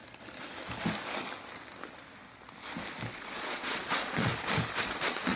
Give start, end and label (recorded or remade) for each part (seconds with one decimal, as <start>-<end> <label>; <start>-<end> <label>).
0.0-3.1 recorded; 3.1-4.3 remade; 4.3-4.8 recorded; 4.8-5.4 remade